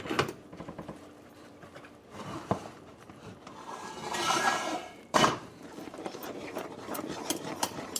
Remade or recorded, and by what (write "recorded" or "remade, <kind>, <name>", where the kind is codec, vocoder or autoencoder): remade, vocoder, BigVGAN v2